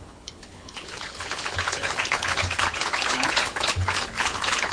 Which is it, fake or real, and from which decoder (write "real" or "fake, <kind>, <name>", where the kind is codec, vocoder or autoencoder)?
fake, codec, HILCodec